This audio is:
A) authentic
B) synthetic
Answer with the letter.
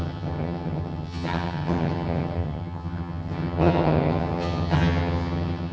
B